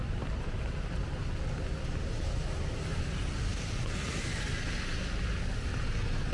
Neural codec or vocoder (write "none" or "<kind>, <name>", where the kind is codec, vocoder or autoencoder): none